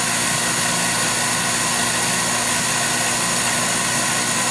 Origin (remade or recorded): recorded